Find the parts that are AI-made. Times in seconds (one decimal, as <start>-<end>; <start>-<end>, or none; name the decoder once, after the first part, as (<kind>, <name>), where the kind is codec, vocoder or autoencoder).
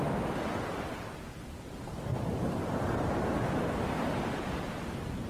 none